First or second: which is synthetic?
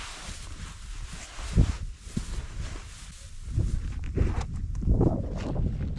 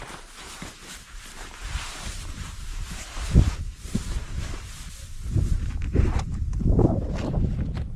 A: second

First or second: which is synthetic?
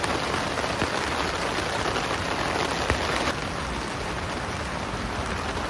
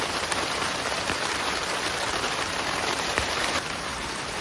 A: second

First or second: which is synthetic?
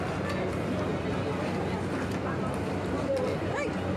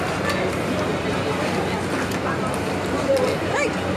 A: second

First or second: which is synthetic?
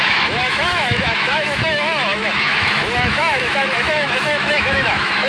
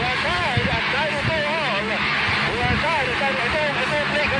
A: first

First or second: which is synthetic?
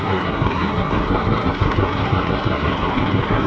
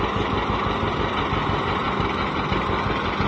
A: first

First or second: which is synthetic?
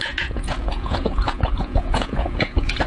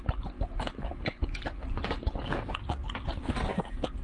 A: first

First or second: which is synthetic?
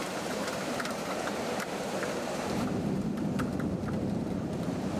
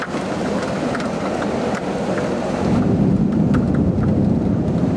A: first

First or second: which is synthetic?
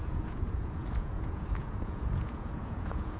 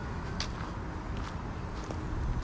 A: first